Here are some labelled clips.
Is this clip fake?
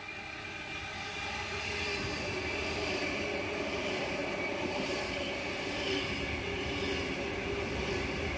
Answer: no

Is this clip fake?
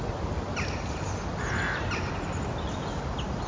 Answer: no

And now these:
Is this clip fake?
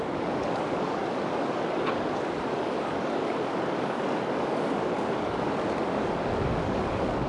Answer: yes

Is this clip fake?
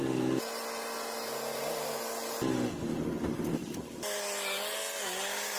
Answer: no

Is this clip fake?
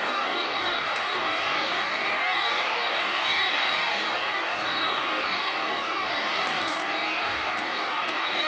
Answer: yes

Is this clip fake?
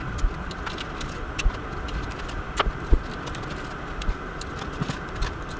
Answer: no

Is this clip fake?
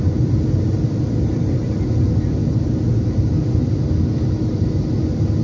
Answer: no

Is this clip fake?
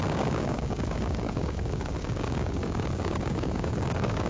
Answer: yes